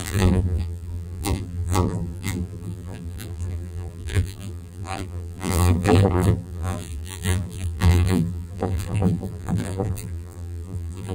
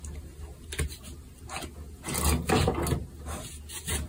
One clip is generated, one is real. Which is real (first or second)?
second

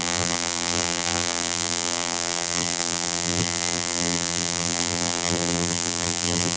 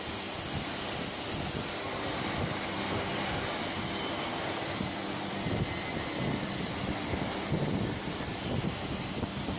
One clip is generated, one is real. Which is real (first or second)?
second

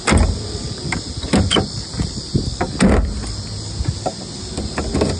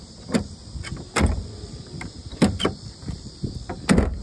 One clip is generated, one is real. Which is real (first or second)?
first